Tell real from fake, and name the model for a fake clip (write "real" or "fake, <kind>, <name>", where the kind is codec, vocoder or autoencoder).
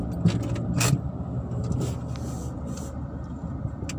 real